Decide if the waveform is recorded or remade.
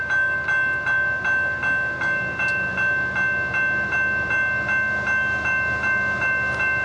recorded